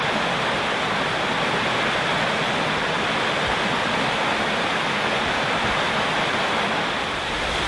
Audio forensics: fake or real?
real